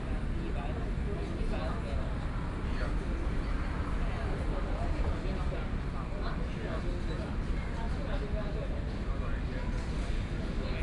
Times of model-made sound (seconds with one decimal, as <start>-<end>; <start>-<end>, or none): none